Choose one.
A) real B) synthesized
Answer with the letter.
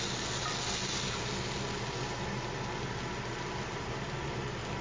A